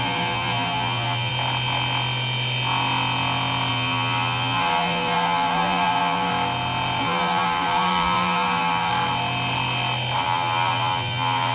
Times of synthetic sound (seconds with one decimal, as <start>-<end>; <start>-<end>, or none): 0.0-1.3; 3.7-6.3; 7.0-8.9; 10.2-11.5